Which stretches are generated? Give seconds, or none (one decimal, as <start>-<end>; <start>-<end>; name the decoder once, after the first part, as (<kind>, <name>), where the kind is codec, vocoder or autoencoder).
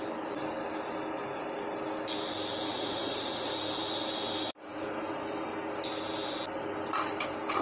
2.7-3.5 (vocoder, Vocos)